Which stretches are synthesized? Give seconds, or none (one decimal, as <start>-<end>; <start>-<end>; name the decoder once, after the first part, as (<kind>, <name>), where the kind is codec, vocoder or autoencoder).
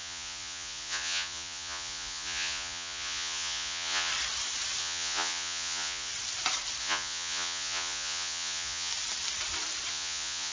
0.0-4.1 (vocoder, Vocos); 4.8-6.1; 6.8-8.9; 9.9-10.5